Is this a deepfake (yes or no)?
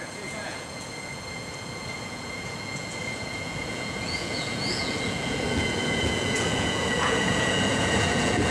yes